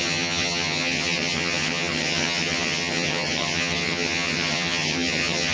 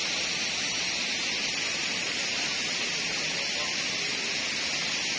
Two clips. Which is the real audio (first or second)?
second